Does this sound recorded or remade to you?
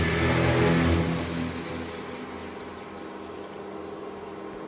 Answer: recorded